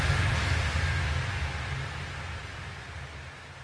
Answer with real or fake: real